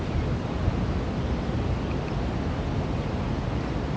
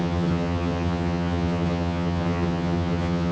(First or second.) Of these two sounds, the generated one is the second